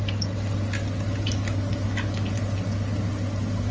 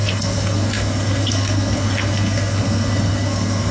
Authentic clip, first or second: first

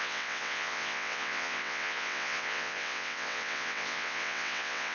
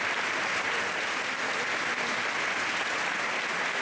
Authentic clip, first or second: second